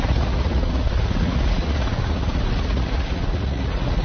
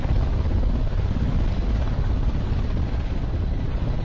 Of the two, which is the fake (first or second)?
first